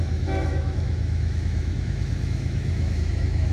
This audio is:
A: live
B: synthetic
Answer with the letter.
B